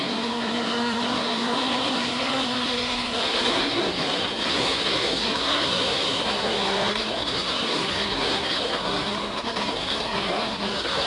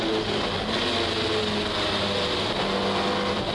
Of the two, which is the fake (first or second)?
first